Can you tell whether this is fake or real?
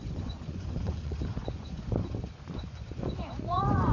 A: fake